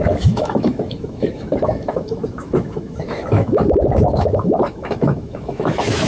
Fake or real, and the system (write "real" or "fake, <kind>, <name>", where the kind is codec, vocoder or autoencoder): fake, autoencoder, DAC-VAE